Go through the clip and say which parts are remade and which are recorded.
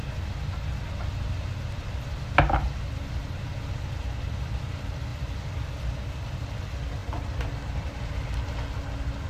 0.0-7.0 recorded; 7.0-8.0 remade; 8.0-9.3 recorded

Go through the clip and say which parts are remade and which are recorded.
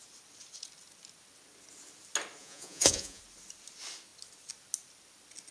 0.0-2.4 recorded; 2.4-3.2 remade; 3.2-5.5 recorded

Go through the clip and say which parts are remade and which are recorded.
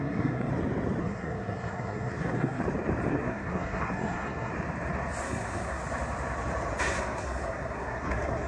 0.0-0.5 remade; 0.5-1.0 recorded; 1.0-2.6 remade; 2.6-3.1 recorded; 3.1-4.5 remade; 4.5-5.2 recorded; 5.2-5.8 remade; 5.8-6.8 recorded; 6.8-8.5 remade